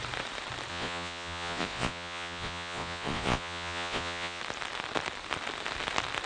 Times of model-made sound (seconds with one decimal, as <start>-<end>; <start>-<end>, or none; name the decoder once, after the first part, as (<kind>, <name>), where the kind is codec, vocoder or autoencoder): 0.7-4.4 (vocoder, Vocos)